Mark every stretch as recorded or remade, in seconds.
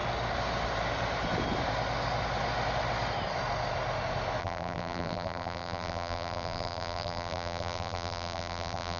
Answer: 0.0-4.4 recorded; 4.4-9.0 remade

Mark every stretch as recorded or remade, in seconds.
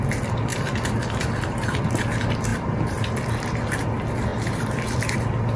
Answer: 0.0-0.5 recorded; 0.5-1.8 remade; 1.8-2.5 recorded; 2.5-3.1 remade; 3.1-4.3 recorded; 4.3-5.1 remade; 5.1-5.6 recorded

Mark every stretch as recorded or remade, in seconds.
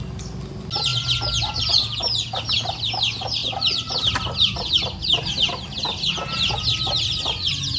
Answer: 0.0-7.8 recorded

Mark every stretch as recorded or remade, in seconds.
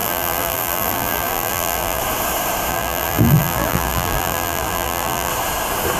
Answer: 0.0-2.0 remade; 2.0-2.7 recorded; 2.7-5.3 remade; 5.3-6.0 recorded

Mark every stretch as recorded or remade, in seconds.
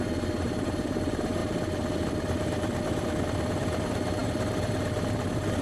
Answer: 0.0-5.6 remade